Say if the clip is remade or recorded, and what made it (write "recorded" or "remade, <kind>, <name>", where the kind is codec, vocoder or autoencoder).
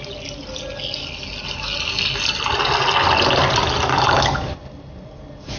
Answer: recorded